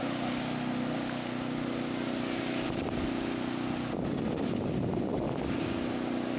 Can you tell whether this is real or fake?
real